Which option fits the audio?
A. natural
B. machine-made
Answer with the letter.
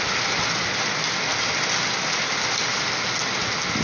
A